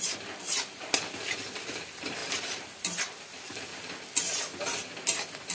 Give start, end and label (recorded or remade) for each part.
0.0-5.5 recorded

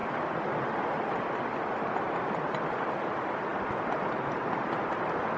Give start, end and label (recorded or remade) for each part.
0.0-5.4 recorded

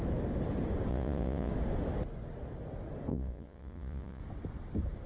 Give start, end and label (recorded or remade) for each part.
0.0-0.9 recorded; 0.9-1.5 remade; 1.5-3.1 recorded; 3.1-4.2 remade; 4.2-5.1 recorded

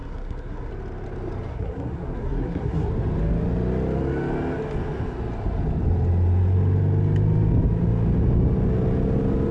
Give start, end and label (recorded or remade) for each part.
0.0-0.7 remade; 0.7-1.5 recorded; 1.5-2.9 remade; 2.9-9.5 recorded

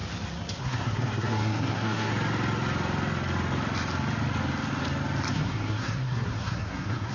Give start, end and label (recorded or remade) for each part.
0.0-0.6 recorded; 0.6-2.1 remade; 2.1-5.3 recorded; 5.3-7.1 remade

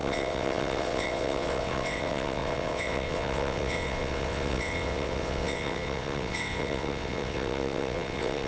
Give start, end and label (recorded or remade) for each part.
0.0-8.5 remade

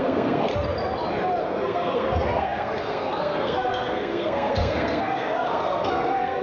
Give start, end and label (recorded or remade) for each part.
0.0-0.5 remade; 0.5-1.4 recorded; 1.4-6.4 remade

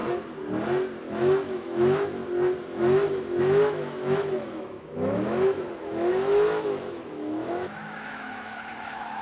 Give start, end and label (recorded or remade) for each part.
0.0-1.0 recorded; 1.0-2.2 remade; 2.2-3.4 recorded; 3.4-9.2 remade